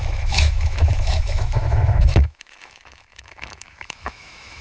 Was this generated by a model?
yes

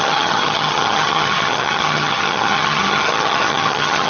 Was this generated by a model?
yes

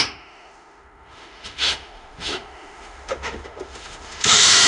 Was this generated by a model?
yes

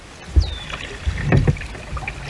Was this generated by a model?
no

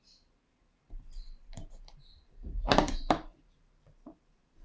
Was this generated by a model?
yes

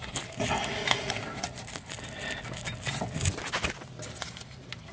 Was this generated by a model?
no